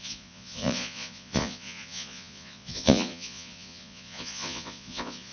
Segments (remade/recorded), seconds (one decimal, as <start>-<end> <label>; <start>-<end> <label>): 0.0-5.3 remade